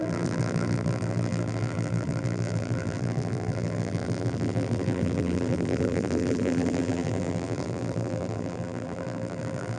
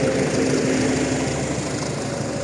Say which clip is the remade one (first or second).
first